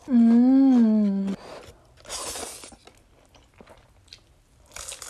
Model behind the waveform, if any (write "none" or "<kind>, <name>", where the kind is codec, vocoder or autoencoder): none